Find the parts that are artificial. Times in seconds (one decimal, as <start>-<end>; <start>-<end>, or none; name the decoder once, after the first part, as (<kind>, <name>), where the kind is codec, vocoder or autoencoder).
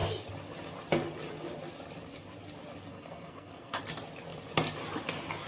2.9-3.8 (codec, SNAC)